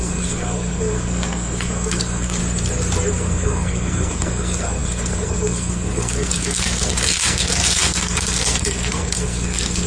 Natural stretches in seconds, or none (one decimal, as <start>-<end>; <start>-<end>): 2.4-3.1